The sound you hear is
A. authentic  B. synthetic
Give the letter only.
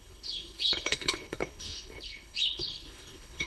B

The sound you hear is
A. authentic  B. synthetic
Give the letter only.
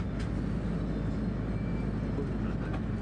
A